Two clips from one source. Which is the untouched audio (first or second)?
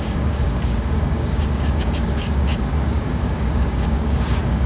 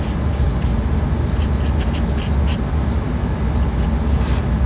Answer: second